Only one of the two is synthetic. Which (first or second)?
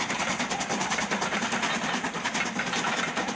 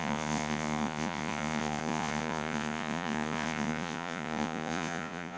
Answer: second